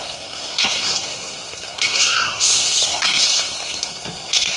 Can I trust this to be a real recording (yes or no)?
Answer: no